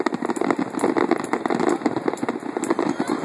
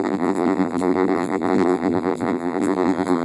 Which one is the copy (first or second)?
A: second